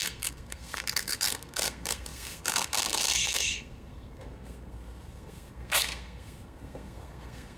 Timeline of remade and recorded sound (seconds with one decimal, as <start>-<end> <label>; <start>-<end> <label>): 0.0-7.6 remade